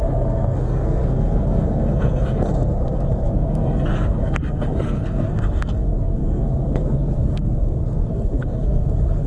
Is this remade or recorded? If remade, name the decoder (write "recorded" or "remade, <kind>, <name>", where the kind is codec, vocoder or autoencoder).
remade, codec, SNAC